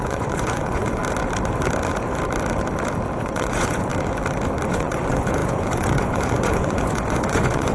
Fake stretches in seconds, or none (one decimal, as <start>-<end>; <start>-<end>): 0.0-1.0; 3.2-3.9; 4.7-7.7